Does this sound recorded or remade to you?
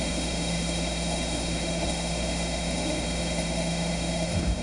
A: remade